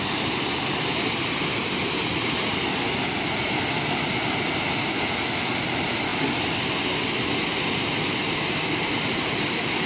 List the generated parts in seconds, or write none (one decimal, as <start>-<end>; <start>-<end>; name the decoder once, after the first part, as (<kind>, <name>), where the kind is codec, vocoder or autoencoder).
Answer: none